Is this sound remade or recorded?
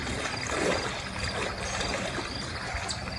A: recorded